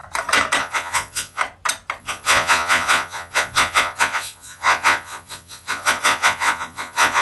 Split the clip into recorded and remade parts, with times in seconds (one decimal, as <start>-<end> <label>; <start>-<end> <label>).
0.0-0.6 recorded; 0.6-1.4 remade; 1.4-2.0 recorded; 2.0-7.2 remade